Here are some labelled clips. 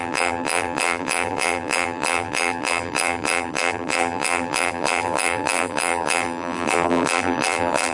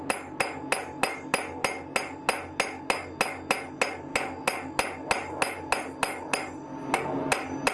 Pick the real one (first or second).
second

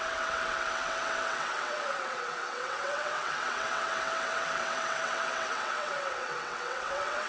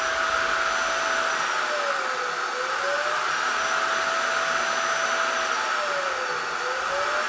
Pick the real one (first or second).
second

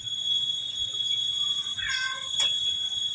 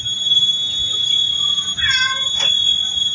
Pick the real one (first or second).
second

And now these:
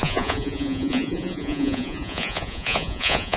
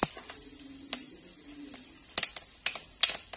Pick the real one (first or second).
second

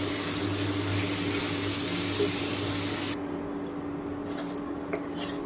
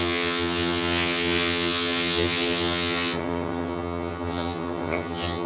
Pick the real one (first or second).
first